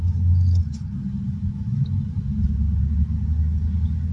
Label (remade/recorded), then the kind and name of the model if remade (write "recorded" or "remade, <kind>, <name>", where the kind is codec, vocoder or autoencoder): recorded